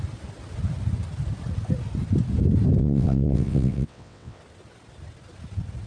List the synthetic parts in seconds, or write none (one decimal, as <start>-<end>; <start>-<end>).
2.8-4.4